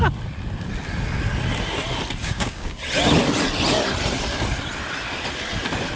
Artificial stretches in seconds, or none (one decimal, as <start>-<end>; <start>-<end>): 2.2-2.8